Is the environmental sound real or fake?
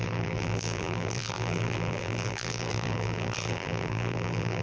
fake